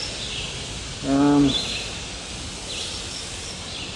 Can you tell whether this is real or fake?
real